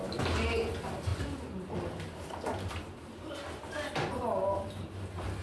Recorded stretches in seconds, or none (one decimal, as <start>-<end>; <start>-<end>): 0.0-5.4